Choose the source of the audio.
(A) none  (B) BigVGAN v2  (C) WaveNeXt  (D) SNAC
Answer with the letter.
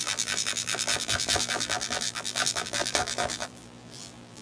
B